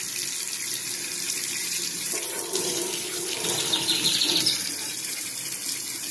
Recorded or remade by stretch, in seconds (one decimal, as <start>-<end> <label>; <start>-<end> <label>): 0.0-1.6 recorded; 1.6-5.3 remade; 5.3-6.1 recorded